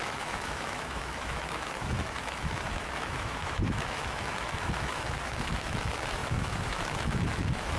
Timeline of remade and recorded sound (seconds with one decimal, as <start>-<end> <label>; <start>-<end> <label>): 0.0-7.8 remade